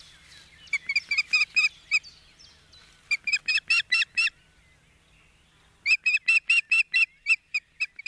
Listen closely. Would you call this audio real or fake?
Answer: real